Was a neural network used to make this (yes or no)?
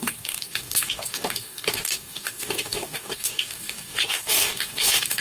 yes